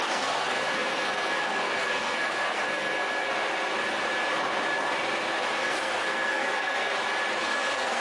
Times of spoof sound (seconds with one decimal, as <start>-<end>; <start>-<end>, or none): 0.0-3.3; 5.6-6.9; 7.4-8.0